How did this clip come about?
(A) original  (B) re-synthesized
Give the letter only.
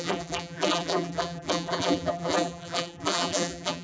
B